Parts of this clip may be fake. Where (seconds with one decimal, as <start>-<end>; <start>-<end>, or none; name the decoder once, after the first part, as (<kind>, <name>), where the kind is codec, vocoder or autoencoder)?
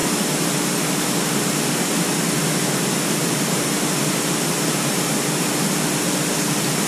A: none